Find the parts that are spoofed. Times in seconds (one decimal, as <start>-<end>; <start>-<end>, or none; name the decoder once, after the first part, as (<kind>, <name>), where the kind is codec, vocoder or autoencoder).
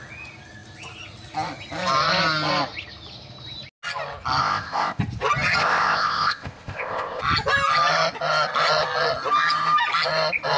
4.4-5.0 (codec, ZipCodec); 5.6-7.2